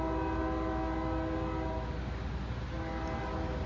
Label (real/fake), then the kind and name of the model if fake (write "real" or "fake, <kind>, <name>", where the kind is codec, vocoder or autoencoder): real